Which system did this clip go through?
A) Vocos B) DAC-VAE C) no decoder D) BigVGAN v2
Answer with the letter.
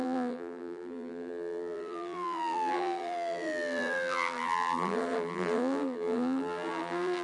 D